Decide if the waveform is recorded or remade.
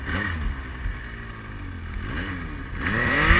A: recorded